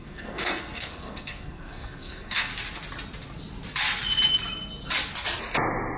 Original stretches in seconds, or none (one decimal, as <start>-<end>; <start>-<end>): 2.5-6.0